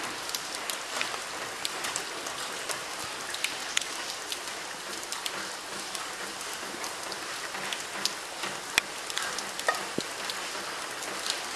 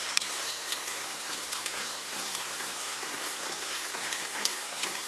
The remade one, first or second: second